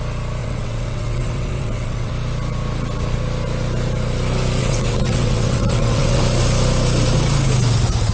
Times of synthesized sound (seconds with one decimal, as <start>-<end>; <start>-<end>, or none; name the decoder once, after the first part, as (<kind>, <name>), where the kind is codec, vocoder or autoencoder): 0.4-2.1 (vocoder, WaveNeXt); 4.6-6.2